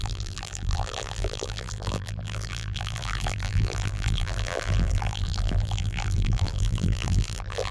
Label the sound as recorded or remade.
remade